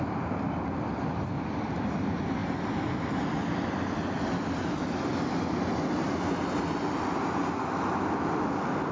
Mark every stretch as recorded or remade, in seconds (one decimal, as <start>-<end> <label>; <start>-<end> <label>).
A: 0.0-8.9 recorded